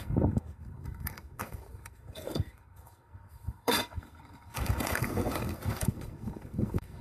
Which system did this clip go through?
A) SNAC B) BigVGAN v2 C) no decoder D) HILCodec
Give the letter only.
A